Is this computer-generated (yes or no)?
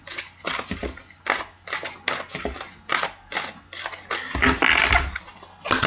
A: no